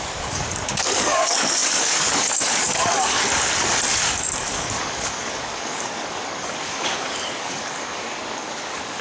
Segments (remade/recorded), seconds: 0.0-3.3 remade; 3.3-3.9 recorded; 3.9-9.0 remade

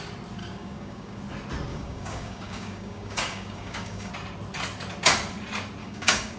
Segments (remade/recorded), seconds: 0.0-0.4 recorded; 0.4-1.2 remade; 1.2-1.7 recorded; 1.7-4.1 remade; 4.1-5.8 recorded; 5.8-6.4 remade

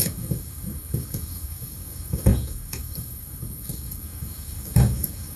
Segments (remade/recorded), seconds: 0.0-5.4 remade

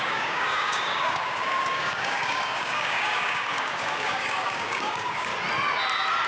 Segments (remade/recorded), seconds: 0.0-5.3 remade; 5.3-6.3 recorded